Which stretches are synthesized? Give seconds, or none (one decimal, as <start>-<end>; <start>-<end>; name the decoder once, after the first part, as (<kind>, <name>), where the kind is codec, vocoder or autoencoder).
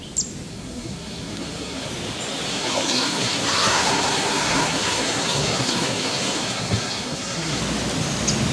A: 0.5-1.9 (codec, SNAC); 2.5-7.6